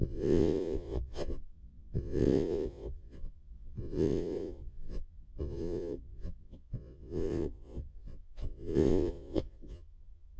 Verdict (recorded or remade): remade